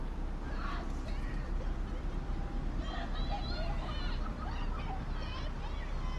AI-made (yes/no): no